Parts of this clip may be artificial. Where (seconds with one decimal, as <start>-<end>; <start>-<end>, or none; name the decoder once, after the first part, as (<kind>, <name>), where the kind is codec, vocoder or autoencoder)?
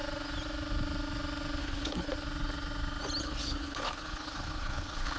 1.6-2.1 (codec, HILCodec); 3.2-5.2